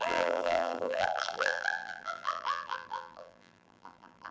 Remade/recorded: remade